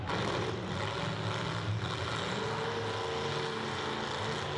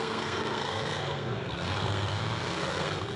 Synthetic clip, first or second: second